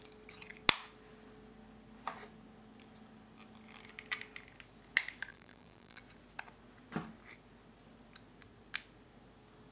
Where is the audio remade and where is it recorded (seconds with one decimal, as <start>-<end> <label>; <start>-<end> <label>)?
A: 0.0-5.3 recorded; 5.3-6.0 remade; 6.0-9.7 recorded